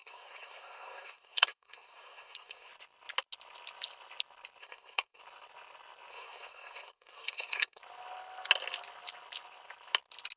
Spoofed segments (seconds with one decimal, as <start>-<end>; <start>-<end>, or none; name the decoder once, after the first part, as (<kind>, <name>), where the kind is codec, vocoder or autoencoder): 0.0-2.7 (codec, SNAC); 4.6-5.2; 6.1-7.8